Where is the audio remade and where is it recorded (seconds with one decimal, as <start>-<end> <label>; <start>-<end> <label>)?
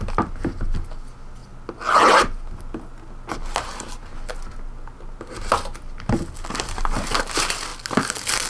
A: 0.0-8.5 recorded